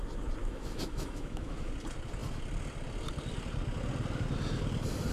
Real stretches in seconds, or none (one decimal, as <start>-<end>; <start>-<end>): 0.0-0.4; 1.7-5.1